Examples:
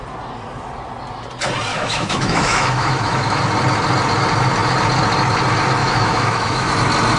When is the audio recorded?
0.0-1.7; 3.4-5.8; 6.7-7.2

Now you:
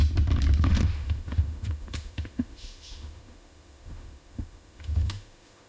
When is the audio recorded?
0.0-0.6